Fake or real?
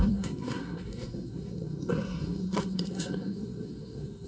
fake